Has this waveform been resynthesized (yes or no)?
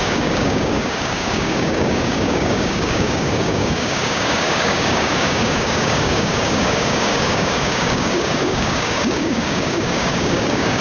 yes